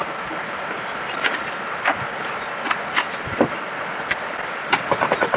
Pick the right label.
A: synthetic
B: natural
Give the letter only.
B